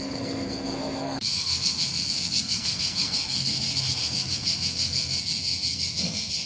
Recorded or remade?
remade